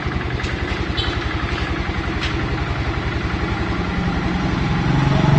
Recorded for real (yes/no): yes